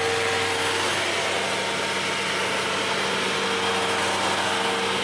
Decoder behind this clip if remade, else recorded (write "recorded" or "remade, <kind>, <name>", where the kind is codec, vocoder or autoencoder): recorded